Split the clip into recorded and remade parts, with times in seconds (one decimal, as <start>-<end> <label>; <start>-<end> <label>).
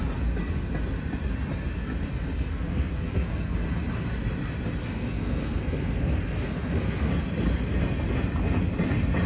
0.0-2.5 recorded; 2.5-3.6 remade; 3.6-4.8 recorded; 4.8-7.1 remade; 7.1-9.3 recorded